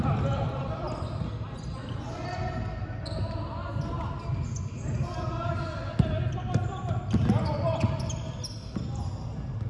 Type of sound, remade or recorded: recorded